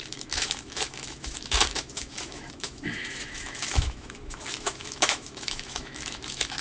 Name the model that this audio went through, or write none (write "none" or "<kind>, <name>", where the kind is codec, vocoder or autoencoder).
autoencoder, DAC-VAE